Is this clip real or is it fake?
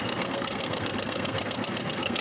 fake